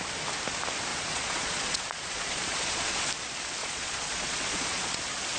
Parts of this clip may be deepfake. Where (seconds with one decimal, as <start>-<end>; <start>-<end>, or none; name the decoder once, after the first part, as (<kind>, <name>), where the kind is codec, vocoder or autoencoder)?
0.9-3.1 (vocoder, Vocos); 3.6-5.0